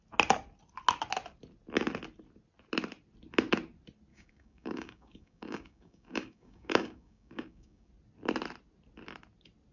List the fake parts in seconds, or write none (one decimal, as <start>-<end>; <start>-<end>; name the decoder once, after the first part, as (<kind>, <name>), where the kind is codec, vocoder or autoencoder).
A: 4.1-7.9 (codec, DAC)